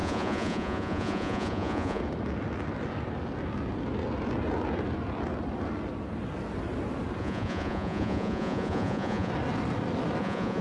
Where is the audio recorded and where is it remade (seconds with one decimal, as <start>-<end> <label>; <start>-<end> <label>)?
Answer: 0.0-2.0 remade; 2.0-7.2 recorded; 7.2-9.3 remade; 9.3-10.2 recorded; 10.2-10.6 remade